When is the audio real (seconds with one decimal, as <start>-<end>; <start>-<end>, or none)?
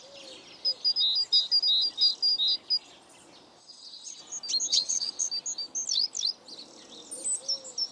0.0-3.6; 4.2-4.7; 5.3-7.9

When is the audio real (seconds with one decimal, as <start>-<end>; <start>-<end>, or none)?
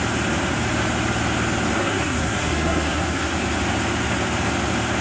0.0-1.8; 3.3-5.0